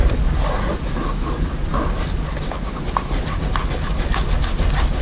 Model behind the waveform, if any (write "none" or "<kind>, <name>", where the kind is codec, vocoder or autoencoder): none